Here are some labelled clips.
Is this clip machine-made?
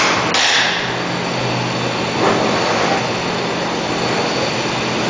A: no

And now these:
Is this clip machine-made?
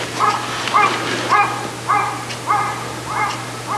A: no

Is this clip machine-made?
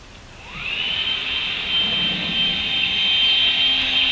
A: no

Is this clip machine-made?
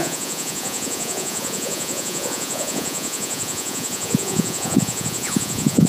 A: yes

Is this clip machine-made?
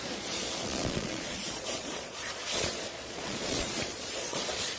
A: yes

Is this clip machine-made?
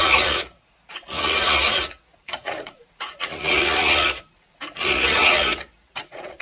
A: yes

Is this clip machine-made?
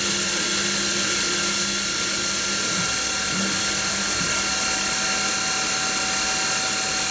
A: no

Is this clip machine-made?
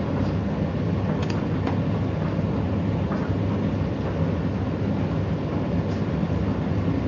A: no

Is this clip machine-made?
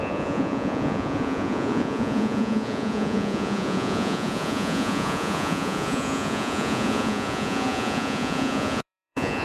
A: yes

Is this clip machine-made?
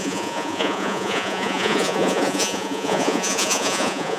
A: yes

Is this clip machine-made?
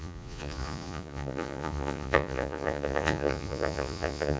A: yes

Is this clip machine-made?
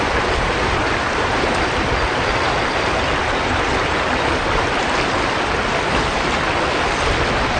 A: no